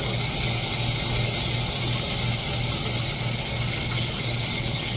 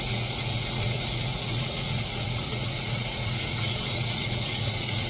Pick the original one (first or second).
first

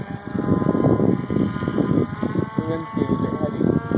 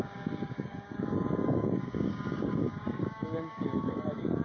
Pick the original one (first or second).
first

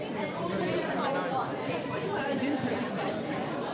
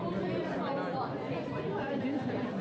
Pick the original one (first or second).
second